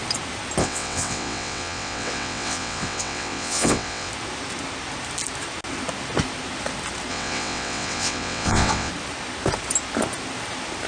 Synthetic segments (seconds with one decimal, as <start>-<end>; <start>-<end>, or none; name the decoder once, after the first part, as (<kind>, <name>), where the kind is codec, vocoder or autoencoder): 0.6-4.1 (vocoder, WaveNeXt); 7.1-8.9